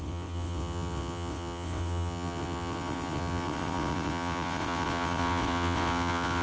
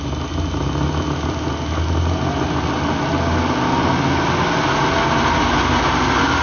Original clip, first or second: second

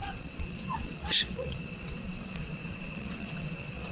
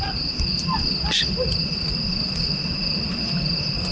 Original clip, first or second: second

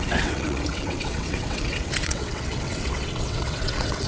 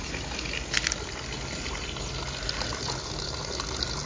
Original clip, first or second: second